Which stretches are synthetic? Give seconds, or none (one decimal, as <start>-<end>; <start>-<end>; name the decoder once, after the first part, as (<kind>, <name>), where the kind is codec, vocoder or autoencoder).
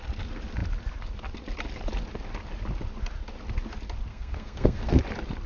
4.1-5.0 (codec, SNAC)